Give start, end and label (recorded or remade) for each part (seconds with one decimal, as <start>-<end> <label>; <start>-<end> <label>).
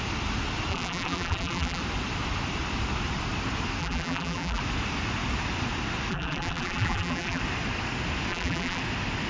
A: 0.0-0.7 recorded; 0.7-1.8 remade; 1.8-3.8 recorded; 3.8-4.6 remade; 4.6-6.1 recorded; 6.1-7.4 remade; 7.4-8.3 recorded; 8.3-8.8 remade; 8.8-9.3 recorded